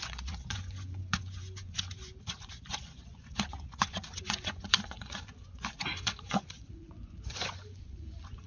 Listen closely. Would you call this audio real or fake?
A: fake